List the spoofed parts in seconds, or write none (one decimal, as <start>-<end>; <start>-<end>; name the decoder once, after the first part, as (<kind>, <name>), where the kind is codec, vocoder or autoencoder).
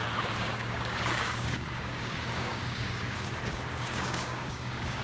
0.0-5.0 (codec, DAC)